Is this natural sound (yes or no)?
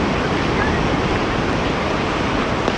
yes